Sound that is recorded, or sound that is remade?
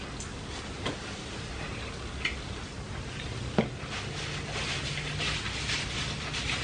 recorded